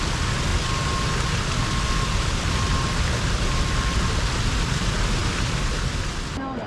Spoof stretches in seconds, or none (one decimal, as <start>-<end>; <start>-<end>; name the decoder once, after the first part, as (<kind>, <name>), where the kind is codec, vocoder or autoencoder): none